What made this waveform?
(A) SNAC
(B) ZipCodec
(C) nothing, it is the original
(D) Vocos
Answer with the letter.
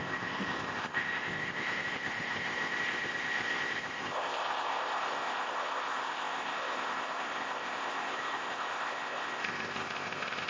B